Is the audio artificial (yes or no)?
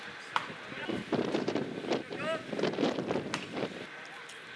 no